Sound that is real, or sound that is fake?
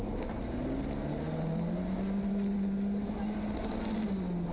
real